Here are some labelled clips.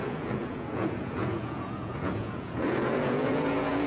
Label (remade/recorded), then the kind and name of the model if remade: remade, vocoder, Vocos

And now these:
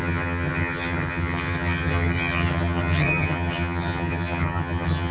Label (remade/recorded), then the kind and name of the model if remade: remade, vocoder, HiFi-GAN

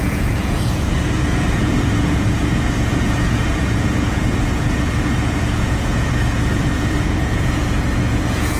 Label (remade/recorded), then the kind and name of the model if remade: remade, vocoder, Vocos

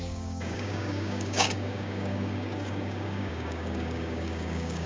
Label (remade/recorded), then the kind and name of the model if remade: remade, codec, DAC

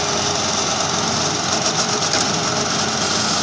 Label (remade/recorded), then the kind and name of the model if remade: recorded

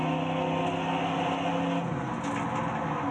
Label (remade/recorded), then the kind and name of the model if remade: recorded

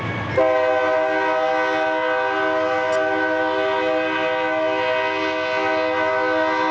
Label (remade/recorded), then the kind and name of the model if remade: recorded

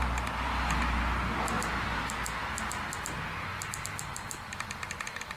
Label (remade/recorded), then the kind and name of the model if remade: recorded